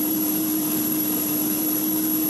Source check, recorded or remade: recorded